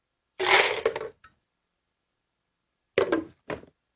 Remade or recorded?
recorded